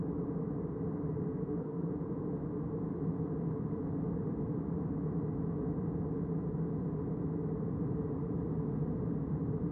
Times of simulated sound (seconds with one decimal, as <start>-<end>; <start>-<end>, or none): 1.3-1.9